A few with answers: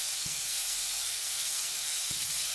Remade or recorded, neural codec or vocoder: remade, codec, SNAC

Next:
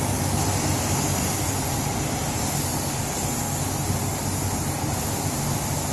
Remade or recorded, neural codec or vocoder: recorded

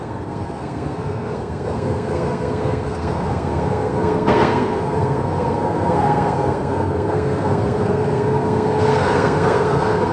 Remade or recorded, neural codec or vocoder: remade, codec, SNAC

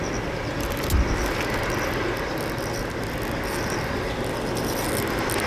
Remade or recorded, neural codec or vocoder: recorded